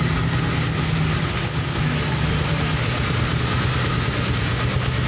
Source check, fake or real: real